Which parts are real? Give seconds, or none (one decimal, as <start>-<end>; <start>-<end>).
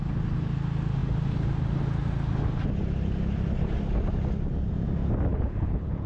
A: 0.0-5.3